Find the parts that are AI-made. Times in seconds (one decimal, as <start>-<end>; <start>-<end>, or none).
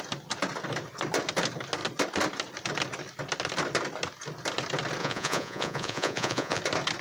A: 5.0-6.6